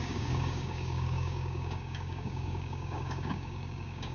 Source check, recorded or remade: remade